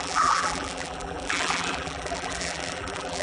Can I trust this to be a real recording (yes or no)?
no